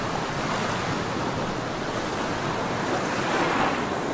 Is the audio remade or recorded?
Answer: recorded